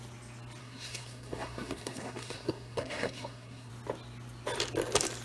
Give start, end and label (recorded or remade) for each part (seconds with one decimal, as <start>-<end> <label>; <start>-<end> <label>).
0.0-0.6 recorded; 0.6-3.7 remade; 3.7-5.2 recorded